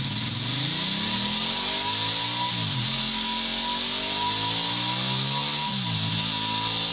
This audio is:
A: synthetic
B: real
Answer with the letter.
B